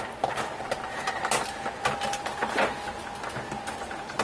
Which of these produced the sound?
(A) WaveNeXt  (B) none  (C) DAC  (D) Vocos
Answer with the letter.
B